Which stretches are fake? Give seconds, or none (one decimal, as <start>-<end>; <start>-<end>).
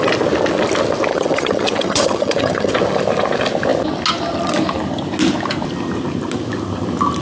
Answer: 1.1-2.7